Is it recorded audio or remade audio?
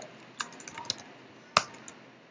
recorded